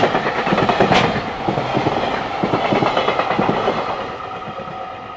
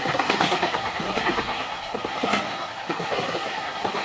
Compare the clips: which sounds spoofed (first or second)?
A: second